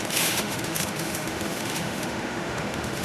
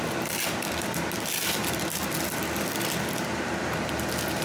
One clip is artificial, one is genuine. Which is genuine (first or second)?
second